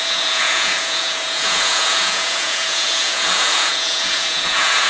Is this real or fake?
fake